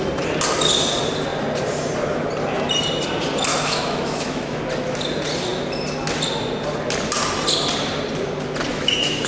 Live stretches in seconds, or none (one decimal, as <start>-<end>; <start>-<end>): 0.0-3.5; 4.6-8.7